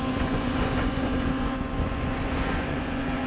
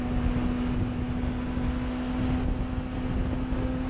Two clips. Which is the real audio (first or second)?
second